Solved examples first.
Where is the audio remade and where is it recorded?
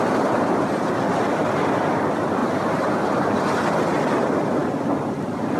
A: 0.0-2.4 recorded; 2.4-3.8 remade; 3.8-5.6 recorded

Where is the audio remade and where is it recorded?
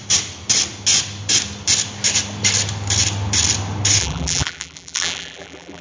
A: 0.0-4.0 recorded; 4.0-5.8 remade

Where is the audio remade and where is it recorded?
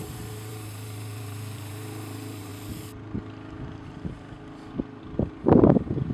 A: 0.0-2.5 remade; 2.5-5.0 recorded; 5.0-6.1 remade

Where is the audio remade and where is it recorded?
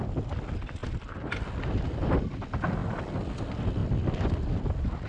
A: 0.0-0.8 recorded; 0.8-1.4 remade; 1.4-5.1 recorded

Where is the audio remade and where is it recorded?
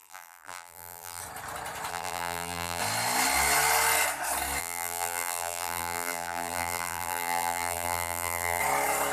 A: 0.0-1.2 remade; 1.2-1.9 recorded; 1.9-2.8 remade; 2.8-4.6 recorded; 4.6-8.6 remade; 8.6-9.1 recorded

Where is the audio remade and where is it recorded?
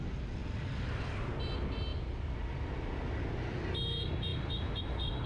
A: 0.0-5.3 recorded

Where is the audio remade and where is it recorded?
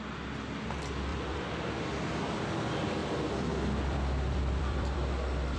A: 0.0-1.1 recorded; 1.1-1.7 remade; 1.7-3.0 recorded; 3.0-5.6 remade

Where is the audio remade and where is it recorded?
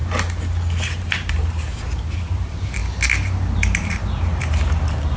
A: 0.0-0.9 recorded; 0.9-2.8 remade; 2.8-3.5 recorded; 3.5-4.0 remade; 4.0-5.2 recorded